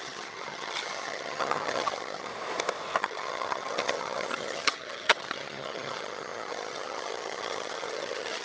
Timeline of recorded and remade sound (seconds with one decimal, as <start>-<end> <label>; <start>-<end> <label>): 0.0-2.3 remade; 2.3-3.0 recorded; 3.0-8.4 remade